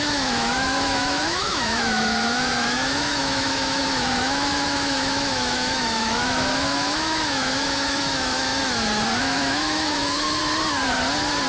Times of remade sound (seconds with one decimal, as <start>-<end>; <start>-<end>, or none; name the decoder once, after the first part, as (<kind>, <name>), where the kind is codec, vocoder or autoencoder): 0.0-8.5 (autoencoder, DAC-VAE); 9.2-10.4